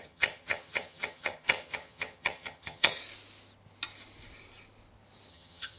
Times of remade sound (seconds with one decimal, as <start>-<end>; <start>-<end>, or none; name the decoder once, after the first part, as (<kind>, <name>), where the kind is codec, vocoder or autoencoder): 0.0-3.0 (vocoder, HiFi-GAN); 5.3-5.8